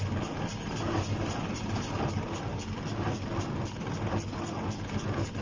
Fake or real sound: real